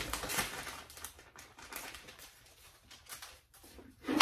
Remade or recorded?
remade